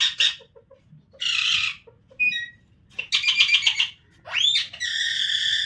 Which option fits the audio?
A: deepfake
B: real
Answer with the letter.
B